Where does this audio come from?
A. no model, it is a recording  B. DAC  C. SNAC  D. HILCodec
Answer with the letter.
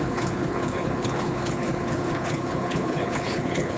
D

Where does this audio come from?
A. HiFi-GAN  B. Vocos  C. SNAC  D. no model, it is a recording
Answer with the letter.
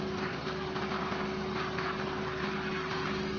D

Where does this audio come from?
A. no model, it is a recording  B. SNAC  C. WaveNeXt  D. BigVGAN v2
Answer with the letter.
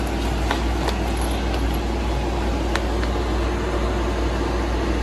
A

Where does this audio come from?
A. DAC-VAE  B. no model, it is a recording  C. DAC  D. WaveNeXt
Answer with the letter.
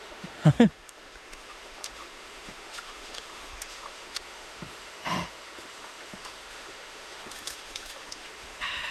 A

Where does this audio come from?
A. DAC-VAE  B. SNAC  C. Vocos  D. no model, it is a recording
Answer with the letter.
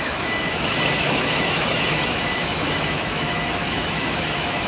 A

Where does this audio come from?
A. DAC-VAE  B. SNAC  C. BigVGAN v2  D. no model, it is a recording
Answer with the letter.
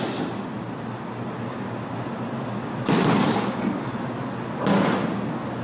D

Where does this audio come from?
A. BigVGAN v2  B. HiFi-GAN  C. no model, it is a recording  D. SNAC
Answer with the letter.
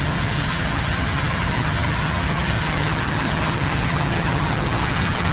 B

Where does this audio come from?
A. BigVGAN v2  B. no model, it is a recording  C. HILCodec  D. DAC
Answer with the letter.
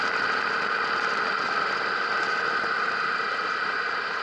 B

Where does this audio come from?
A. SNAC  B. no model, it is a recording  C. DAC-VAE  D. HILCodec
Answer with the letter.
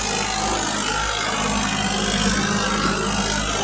B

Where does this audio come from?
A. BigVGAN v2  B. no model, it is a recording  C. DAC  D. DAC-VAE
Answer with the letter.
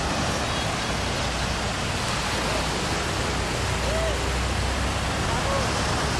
B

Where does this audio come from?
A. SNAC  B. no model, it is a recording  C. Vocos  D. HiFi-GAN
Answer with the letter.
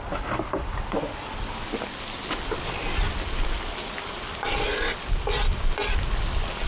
B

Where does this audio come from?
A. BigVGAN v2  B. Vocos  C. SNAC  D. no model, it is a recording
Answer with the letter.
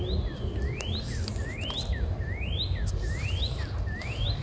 D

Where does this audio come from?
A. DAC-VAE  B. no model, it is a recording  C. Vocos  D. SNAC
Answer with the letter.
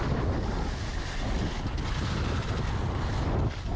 B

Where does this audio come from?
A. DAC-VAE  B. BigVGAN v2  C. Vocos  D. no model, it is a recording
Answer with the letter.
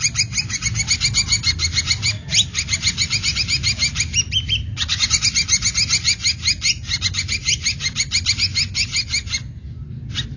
D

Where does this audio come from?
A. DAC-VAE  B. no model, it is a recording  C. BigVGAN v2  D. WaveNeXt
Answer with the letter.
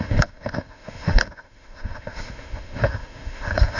A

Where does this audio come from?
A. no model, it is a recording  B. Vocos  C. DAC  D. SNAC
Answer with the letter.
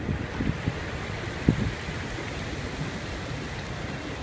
A